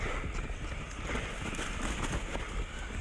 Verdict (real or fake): real